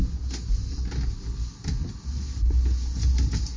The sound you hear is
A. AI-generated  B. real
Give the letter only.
B